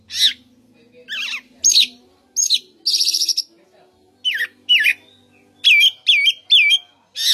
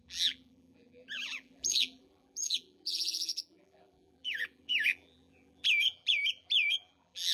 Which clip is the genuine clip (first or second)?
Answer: first